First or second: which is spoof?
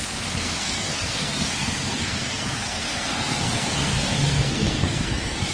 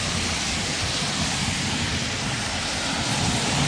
first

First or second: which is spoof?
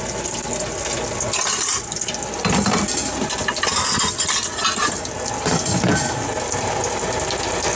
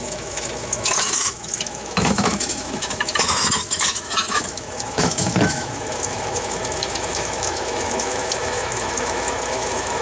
second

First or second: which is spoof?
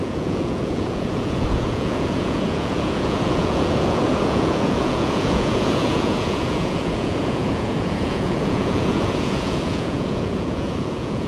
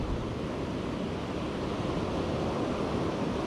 first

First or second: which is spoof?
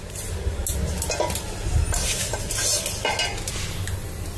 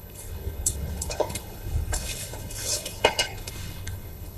second